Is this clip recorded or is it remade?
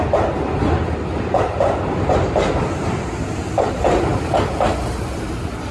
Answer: recorded